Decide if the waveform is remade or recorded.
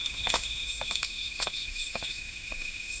remade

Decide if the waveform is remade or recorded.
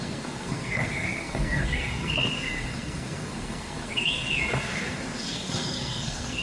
remade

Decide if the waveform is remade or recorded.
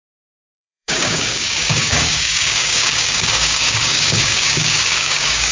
remade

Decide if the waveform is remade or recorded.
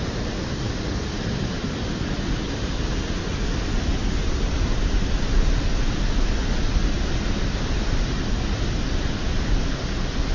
recorded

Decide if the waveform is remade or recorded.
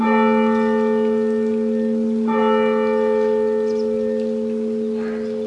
recorded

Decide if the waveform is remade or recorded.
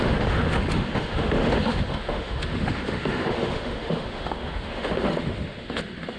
remade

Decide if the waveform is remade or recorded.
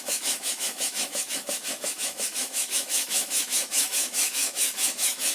remade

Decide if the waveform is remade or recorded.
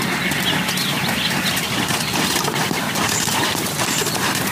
remade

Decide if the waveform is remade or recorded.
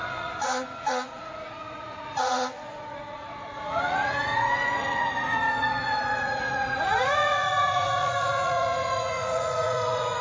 remade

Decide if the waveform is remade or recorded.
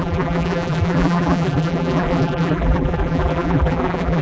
remade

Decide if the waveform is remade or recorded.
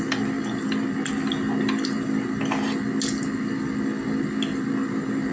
recorded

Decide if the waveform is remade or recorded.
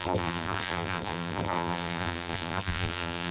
remade